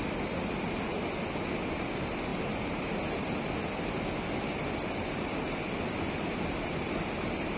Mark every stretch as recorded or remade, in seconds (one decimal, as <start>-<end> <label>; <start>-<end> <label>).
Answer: 0.0-2.3 recorded; 2.3-3.5 remade; 3.5-7.6 recorded